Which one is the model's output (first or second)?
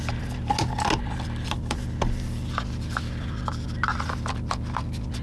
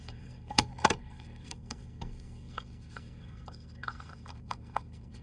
second